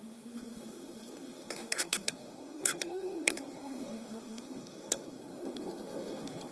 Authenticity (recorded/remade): remade